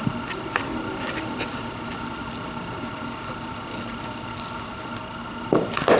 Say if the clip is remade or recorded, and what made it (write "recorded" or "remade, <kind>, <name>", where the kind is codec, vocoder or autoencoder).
recorded